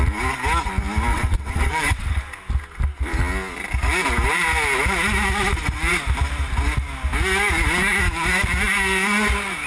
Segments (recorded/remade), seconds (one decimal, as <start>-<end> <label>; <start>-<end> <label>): 0.0-1.1 recorded; 1.1-2.2 remade; 2.2-9.7 recorded